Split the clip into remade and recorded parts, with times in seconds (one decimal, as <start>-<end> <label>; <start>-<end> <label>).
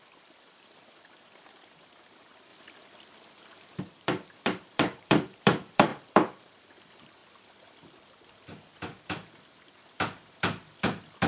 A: 0.0-2.5 remade; 2.5-3.8 recorded; 3.8-7.2 remade; 7.2-9.0 recorded; 9.0-11.3 remade